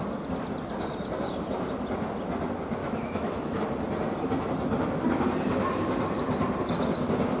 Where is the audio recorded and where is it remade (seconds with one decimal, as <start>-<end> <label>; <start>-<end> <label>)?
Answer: 0.0-2.8 recorded; 2.8-3.6 remade; 3.6-7.4 recorded